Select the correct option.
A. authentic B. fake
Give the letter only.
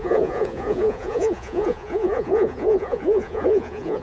B